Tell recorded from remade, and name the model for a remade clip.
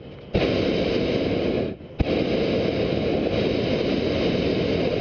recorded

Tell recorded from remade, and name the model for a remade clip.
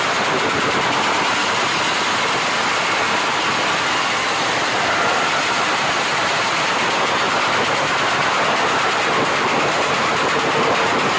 recorded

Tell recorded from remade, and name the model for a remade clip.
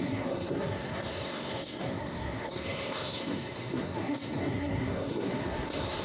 remade, codec, SNAC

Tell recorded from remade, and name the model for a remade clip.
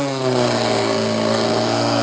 remade, codec, SNAC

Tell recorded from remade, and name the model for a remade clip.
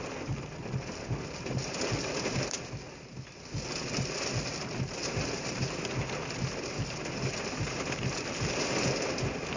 recorded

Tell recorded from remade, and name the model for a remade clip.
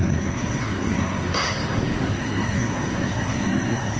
remade, codec, SNAC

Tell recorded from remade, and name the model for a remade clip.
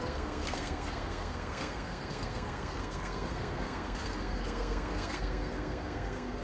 remade, codec, SNAC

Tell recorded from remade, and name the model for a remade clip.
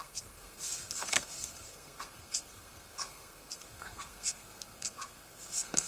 remade, codec, SNAC